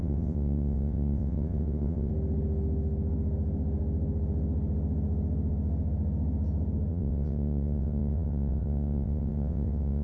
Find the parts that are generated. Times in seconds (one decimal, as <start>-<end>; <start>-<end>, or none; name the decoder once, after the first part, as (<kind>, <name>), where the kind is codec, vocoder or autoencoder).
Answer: 0.0-2.1 (vocoder, WaveNeXt); 6.9-10.0